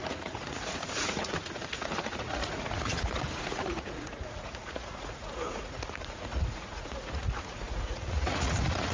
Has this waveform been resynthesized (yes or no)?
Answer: yes